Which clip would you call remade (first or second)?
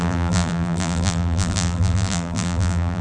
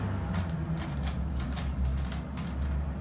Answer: first